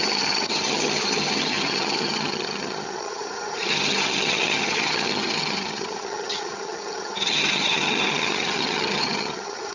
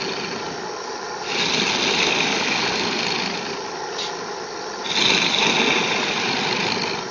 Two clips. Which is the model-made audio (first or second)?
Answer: first